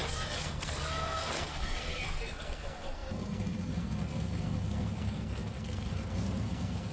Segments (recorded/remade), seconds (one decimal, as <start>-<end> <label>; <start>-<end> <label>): 0.0-6.9 remade